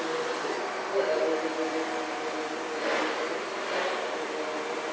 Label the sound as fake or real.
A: real